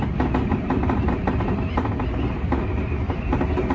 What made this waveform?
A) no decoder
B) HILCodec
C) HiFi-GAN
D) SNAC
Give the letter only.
A